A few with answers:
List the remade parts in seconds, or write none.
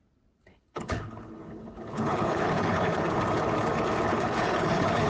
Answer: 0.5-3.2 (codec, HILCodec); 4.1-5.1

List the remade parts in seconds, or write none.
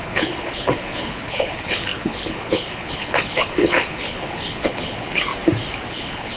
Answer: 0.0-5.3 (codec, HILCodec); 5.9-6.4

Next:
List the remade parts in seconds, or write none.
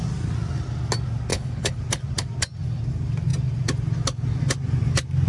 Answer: 1.3-1.8 (codec, HILCodec)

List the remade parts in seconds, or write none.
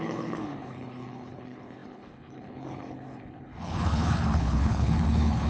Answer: 0.0-5.5 (codec, HILCodec)